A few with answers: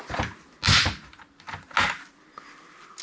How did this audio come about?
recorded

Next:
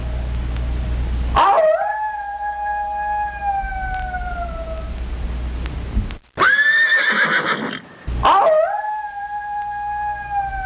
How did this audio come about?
recorded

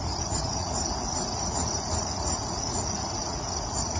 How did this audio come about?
remade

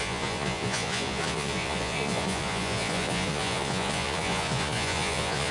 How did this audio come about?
remade